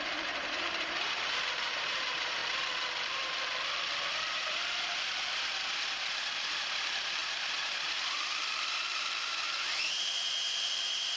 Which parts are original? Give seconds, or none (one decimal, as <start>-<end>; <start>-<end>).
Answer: 2.4-4.3